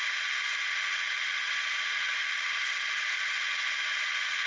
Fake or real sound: real